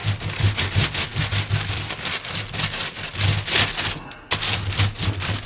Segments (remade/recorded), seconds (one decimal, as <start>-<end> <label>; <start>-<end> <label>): 0.0-5.5 recorded